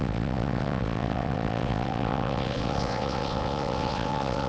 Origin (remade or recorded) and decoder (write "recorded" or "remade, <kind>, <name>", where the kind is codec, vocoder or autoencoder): remade, vocoder, WaveNeXt